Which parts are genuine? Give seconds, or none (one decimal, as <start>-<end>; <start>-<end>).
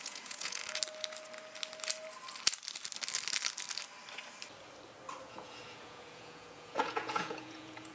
0.6-5.2